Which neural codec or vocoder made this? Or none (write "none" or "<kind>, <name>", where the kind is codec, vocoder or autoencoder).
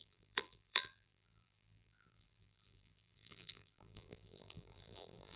vocoder, BigVGAN v2